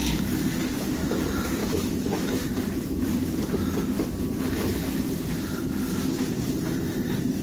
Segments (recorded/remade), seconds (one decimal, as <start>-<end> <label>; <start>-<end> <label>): 0.0-1.6 recorded; 1.6-2.5 remade; 2.5-7.4 recorded